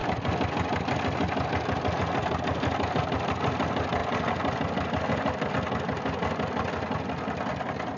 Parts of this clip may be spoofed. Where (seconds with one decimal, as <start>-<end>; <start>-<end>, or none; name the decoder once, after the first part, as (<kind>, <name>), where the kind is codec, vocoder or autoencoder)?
none